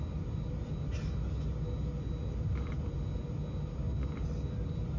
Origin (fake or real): real